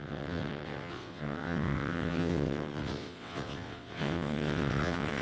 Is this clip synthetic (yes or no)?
yes